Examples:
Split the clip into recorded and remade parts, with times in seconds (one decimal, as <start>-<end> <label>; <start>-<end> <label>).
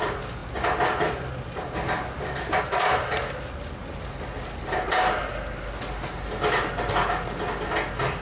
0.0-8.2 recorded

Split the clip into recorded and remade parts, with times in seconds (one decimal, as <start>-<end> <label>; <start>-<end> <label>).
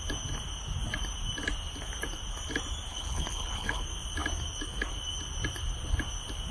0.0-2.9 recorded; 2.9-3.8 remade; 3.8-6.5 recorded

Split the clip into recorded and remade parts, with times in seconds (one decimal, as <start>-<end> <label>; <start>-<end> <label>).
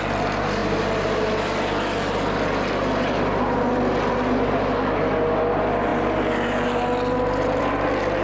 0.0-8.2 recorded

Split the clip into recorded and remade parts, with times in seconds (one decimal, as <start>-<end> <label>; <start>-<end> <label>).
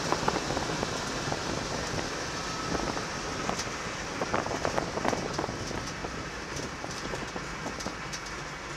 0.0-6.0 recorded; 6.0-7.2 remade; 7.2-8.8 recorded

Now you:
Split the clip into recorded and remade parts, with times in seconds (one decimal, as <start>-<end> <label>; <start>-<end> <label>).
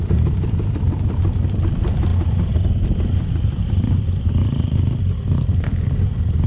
0.0-6.5 remade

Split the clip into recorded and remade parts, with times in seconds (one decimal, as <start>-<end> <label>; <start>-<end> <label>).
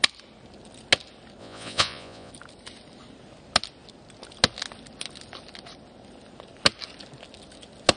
0.0-1.4 recorded; 1.4-2.3 remade; 2.3-8.0 recorded